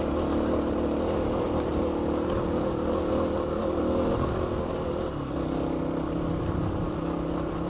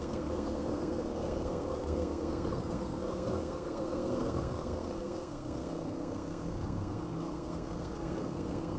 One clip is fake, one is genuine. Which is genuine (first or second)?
first